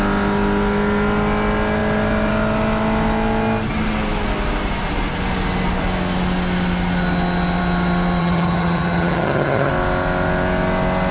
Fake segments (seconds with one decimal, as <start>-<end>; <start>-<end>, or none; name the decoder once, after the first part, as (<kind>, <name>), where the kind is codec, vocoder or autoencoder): 8.2-9.7 (vocoder, HiFi-GAN)